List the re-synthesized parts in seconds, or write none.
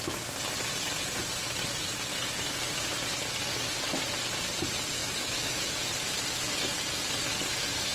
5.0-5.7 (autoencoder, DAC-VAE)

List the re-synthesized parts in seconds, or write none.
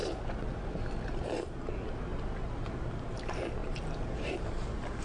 none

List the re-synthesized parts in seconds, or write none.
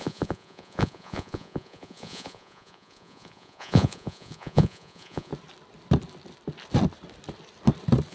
0.0-5.3 (vocoder, Vocos)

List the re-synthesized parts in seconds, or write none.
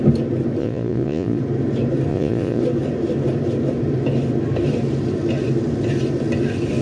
0.6-1.4 (vocoder, Vocos); 2.1-2.6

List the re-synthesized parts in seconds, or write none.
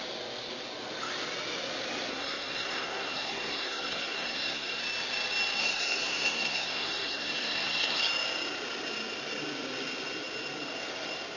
2.1-4.8 (codec, SNAC); 5.6-8.0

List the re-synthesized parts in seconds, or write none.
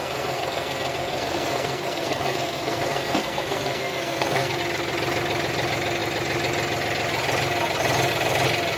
0.0-4.6 (codec, SNAC)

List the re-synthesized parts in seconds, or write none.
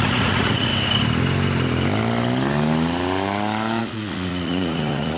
0.0-0.7 (vocoder, Vocos); 3.8-5.2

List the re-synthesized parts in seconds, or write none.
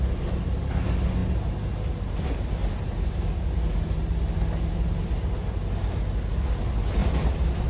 7.0-7.7 (vocoder, BigVGAN v2)